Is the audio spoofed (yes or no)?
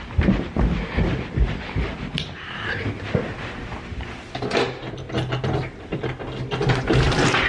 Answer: no